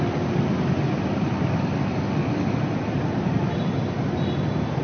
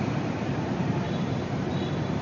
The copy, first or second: second